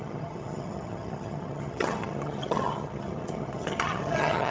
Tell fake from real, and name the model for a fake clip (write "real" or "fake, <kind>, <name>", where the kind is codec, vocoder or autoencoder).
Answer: fake, vocoder, HiFi-GAN